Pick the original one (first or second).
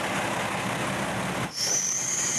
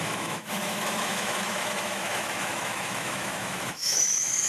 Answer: first